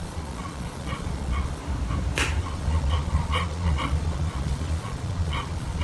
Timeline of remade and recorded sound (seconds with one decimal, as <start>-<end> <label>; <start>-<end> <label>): 0.0-1.6 remade; 1.6-2.4 recorded; 2.4-5.8 remade